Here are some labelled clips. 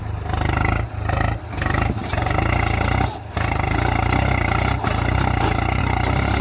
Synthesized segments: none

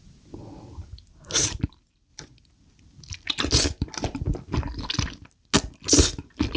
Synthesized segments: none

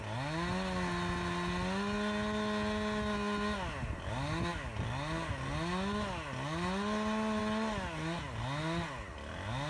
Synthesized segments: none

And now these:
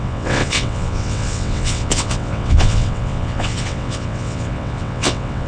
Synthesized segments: 0.0-5.5

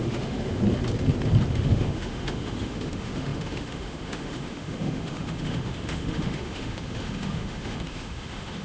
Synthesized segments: 0.0-0.6; 1.5-8.6